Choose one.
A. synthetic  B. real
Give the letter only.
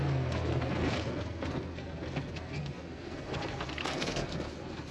A